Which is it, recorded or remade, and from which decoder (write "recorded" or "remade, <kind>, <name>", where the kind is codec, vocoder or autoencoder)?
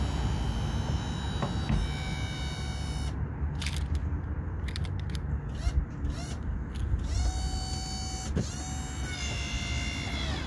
recorded